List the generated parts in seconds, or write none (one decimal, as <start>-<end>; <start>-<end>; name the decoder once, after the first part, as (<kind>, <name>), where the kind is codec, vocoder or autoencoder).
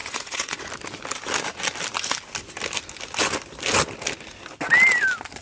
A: 0.0-0.7 (vocoder, Vocos)